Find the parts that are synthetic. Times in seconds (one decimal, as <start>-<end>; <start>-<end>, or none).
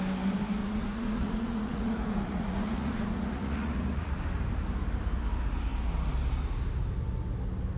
0.6-4.2